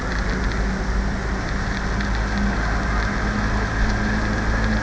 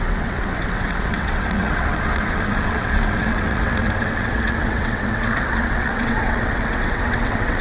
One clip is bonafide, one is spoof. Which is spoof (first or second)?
second